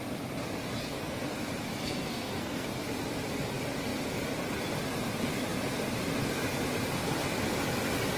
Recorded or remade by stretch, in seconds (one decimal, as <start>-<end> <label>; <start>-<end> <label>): 0.0-0.8 recorded; 0.8-1.3 remade; 1.3-1.8 recorded; 1.8-2.7 remade; 2.7-8.2 recorded